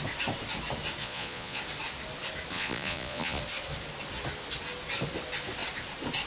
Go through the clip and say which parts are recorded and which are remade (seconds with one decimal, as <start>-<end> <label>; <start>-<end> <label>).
0.0-1.0 recorded; 1.0-1.6 remade; 1.6-2.5 recorded; 2.5-3.4 remade; 3.4-6.3 recorded